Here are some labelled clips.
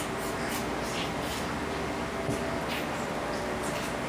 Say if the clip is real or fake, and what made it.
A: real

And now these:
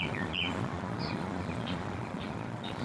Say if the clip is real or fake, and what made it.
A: fake, vocoder, Vocos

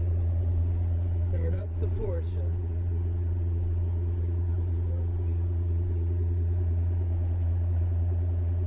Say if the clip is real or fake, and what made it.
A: fake, vocoder, Vocos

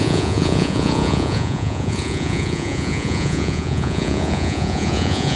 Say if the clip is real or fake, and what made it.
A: fake, vocoder, Vocos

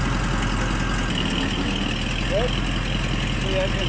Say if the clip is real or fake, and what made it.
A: real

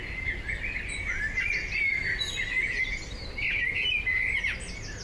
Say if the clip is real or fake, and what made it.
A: real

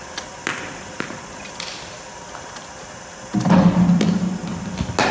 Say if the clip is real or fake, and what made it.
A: real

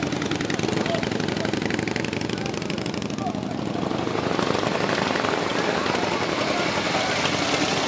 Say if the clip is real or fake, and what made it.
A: real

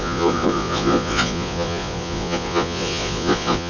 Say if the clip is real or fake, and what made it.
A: fake, vocoder, Vocos